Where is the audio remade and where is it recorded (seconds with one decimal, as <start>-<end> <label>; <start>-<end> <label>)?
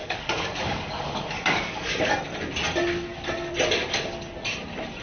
0.0-2.1 remade; 2.1-5.0 recorded